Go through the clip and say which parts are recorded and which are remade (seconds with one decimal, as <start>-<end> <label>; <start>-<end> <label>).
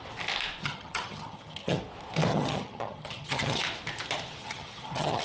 0.0-0.6 recorded; 0.6-1.8 remade; 1.8-2.3 recorded; 2.3-3.6 remade; 3.6-4.4 recorded; 4.4-5.2 remade